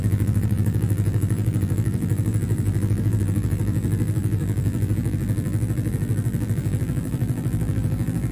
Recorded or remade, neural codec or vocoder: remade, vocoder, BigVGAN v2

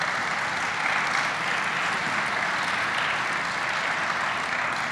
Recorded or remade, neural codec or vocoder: recorded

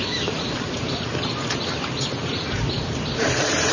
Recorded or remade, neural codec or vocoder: remade, vocoder, BigVGAN v2